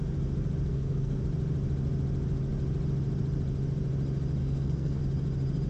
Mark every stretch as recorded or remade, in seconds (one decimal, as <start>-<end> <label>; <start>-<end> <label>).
0.0-0.7 recorded; 0.7-1.2 remade; 1.2-4.4 recorded; 4.4-5.0 remade; 5.0-5.7 recorded